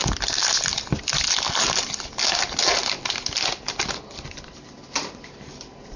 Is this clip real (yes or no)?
yes